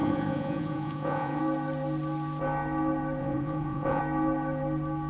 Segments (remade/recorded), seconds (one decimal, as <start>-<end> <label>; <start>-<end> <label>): 0.0-1.4 remade; 1.4-3.2 recorded; 3.2-4.0 remade; 4.0-5.1 recorded